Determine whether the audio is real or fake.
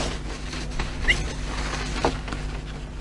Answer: real